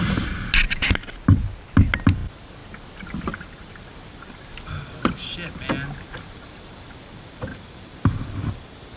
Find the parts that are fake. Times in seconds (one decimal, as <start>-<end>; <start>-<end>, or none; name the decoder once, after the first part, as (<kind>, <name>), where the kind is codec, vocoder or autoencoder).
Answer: none